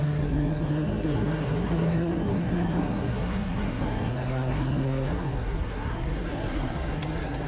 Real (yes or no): no